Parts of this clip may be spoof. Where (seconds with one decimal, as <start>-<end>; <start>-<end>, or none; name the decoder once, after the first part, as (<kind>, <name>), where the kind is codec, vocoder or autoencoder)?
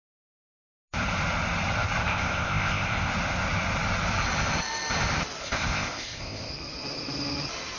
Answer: 2.0-3.1 (codec, ZipCodec); 5.4-6.5